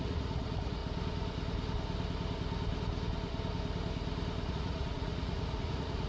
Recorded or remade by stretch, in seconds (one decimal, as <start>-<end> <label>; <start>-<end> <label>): 0.0-0.8 remade; 0.8-4.5 recorded; 4.5-6.1 remade